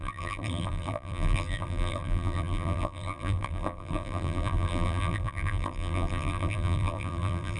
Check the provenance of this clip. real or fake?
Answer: fake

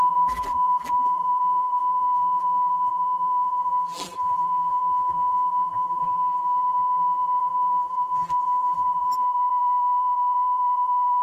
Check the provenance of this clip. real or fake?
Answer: fake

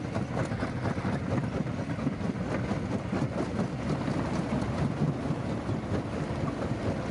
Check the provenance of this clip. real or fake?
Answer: real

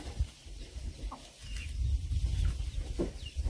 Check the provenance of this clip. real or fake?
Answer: fake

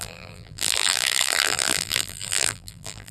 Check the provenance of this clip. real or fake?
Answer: fake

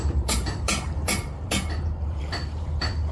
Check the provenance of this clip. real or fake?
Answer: fake